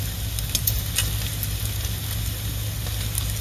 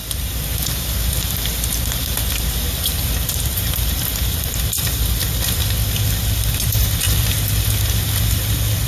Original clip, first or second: first